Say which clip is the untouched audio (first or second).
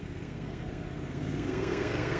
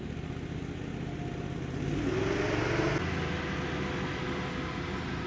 second